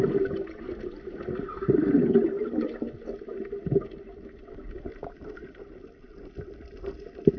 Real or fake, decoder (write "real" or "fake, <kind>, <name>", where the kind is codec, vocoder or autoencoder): real